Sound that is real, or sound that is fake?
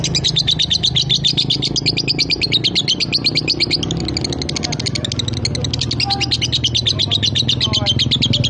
real